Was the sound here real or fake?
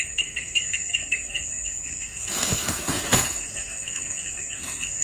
fake